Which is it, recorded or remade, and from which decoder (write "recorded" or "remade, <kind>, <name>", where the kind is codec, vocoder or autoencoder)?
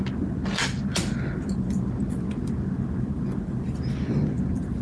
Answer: recorded